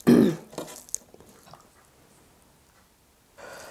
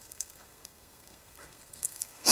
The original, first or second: first